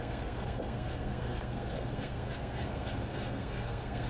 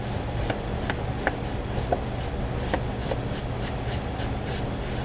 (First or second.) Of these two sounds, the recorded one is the second